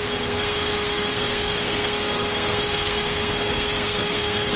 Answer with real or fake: fake